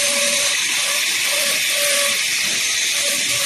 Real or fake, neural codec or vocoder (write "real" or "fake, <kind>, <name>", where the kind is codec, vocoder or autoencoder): fake, vocoder, BigVGAN v2